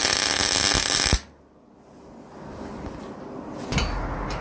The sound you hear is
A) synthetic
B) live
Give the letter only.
B